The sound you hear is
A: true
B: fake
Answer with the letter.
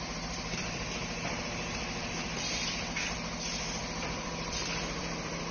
B